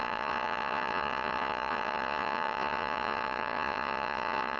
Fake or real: fake